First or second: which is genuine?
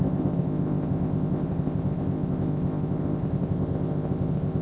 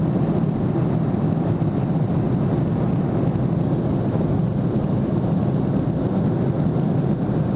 second